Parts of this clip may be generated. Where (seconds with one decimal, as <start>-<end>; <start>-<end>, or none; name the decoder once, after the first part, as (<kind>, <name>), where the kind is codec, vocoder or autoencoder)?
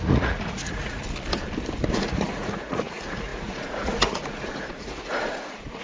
0.0-1.0 (vocoder, Vocos); 1.9-5.8